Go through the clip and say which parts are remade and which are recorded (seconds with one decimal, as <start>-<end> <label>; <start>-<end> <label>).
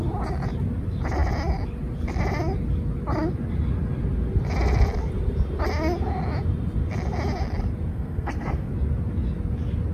0.0-7.9 recorded; 7.9-8.7 remade; 8.7-9.9 recorded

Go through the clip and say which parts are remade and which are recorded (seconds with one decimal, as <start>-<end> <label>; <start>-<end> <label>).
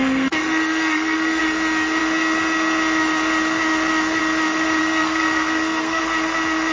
0.0-1.4 remade; 1.4-4.8 recorded; 4.8-6.0 remade; 6.0-6.7 recorded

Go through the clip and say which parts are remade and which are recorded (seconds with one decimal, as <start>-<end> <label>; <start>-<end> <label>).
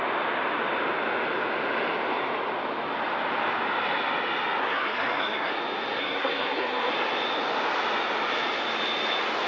0.0-4.6 recorded; 4.6-5.5 remade; 5.5-6.0 recorded; 6.0-6.9 remade; 6.9-9.5 recorded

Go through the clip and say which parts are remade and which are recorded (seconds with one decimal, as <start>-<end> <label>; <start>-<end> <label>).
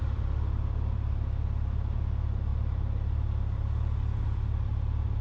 0.0-5.2 recorded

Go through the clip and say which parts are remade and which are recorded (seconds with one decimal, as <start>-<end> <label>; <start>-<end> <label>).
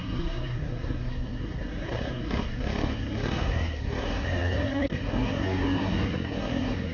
0.0-6.9 remade